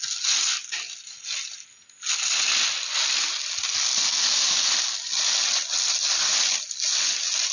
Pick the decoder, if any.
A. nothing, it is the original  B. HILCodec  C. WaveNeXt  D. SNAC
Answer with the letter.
A